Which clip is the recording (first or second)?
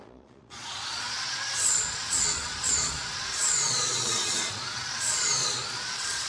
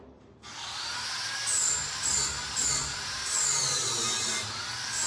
second